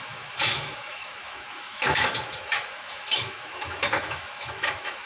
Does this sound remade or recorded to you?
remade